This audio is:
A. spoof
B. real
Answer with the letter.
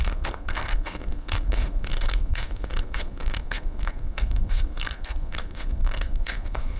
A